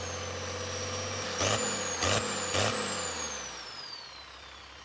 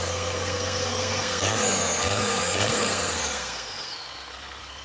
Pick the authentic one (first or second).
first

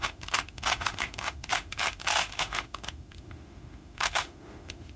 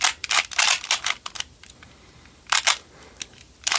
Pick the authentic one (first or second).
second